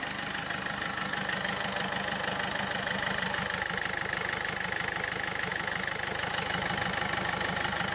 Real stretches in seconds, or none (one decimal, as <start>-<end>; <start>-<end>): 0.0-7.9